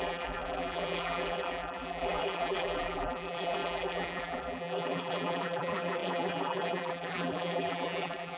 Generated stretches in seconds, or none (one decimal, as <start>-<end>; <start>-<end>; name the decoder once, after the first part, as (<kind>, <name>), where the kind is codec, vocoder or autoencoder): 0.0-8.4 (vocoder, BigVGAN v2)